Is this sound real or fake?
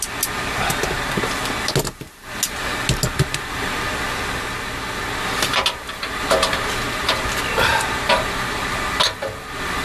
real